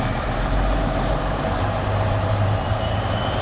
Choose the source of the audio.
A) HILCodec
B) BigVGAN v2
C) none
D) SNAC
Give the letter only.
B